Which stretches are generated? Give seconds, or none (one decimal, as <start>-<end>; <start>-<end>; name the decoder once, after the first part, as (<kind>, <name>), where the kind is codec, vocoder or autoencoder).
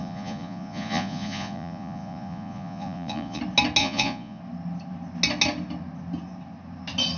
0.0-3.4 (vocoder, Vocos); 3.8-4.4